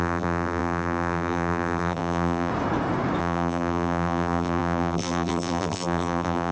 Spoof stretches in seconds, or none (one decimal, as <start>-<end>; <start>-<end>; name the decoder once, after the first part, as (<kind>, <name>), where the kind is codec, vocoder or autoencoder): 0.0-2.5 (vocoder, BigVGAN v2); 3.2-6.5